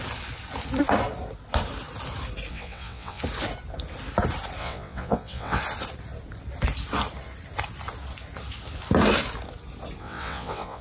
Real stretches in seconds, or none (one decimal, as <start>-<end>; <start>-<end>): 0.0-2.5; 3.2-4.6; 5.6-10.0

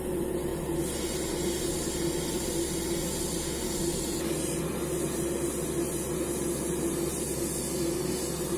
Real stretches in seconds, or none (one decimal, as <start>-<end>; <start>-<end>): 0.0-8.6

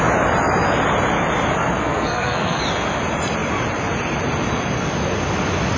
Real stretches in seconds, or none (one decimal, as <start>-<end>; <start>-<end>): 0.0-1.8; 2.6-5.8